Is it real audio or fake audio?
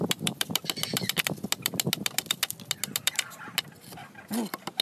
real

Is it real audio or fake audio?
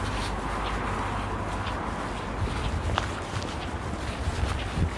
real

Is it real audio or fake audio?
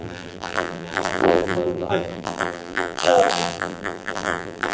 fake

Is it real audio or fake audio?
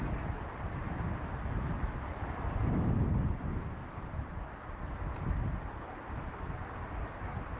real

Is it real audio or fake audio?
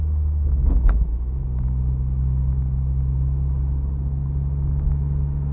real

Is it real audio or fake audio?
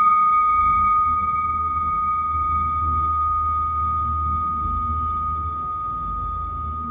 fake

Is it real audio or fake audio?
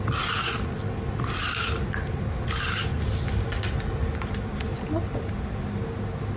real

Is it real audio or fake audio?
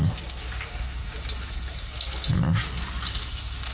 real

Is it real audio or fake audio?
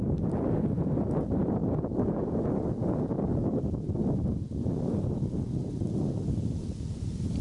real